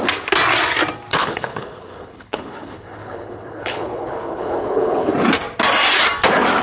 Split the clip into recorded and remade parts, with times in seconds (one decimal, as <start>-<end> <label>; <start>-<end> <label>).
0.0-1.1 recorded; 1.1-5.1 remade; 5.1-6.6 recorded